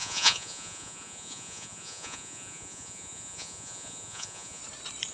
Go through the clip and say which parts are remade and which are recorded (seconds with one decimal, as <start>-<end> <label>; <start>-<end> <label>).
0.0-4.6 remade; 4.6-5.1 recorded